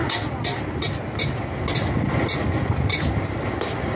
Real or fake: real